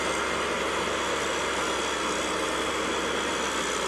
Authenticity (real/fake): real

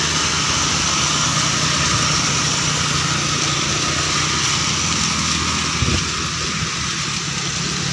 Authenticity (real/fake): real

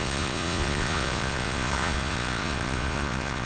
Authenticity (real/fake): fake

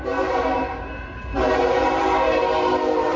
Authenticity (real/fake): fake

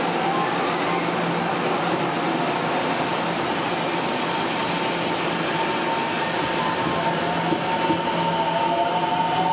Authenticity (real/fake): real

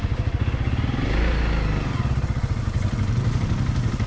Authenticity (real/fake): real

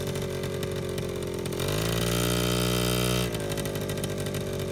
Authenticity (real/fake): real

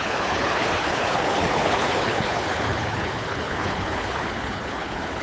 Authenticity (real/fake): fake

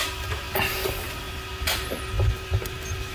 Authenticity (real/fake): real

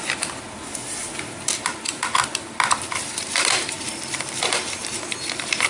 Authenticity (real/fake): fake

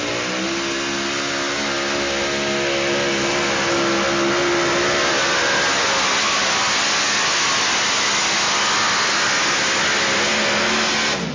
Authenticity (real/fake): real